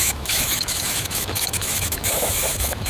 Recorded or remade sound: remade